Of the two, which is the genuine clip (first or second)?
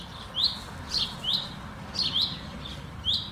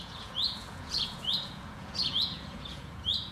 first